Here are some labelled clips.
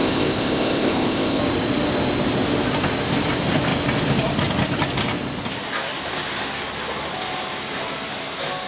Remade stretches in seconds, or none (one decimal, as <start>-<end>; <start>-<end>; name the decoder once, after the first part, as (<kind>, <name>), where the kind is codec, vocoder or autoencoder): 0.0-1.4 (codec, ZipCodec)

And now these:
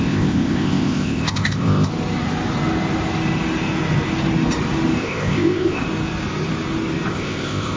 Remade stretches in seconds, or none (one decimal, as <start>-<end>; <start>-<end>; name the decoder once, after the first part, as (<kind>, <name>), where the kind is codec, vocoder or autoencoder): 0.0-1.9 (codec, ZipCodec); 5.0-5.8; 7.1-7.8

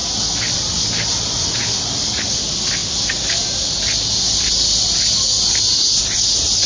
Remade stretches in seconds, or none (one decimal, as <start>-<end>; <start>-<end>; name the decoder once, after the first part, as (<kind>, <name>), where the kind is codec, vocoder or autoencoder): none